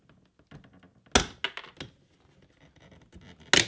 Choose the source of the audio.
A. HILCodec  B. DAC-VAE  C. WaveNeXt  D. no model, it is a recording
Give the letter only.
D